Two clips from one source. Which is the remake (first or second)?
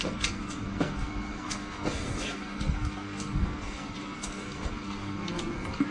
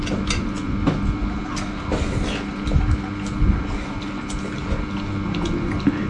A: first